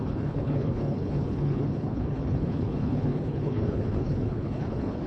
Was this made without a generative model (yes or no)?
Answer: no